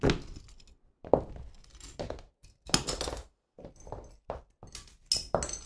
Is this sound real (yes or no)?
yes